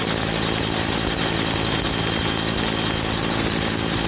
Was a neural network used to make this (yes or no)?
no